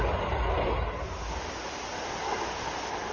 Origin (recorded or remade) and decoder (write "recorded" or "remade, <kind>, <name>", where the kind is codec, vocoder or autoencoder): recorded